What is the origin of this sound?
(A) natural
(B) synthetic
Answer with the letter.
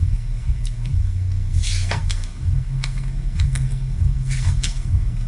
B